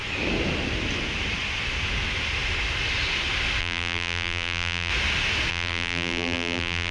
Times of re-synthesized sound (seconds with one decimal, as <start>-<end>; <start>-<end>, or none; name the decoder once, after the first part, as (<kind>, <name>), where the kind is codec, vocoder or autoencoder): 3.6-4.9 (vocoder, BigVGAN v2); 5.5-6.9